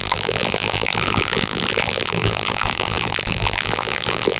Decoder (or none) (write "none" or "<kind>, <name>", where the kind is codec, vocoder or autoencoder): vocoder, BigVGAN v2